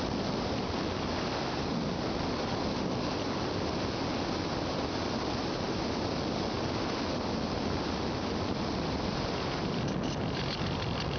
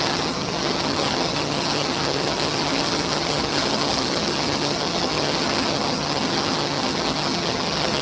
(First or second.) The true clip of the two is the first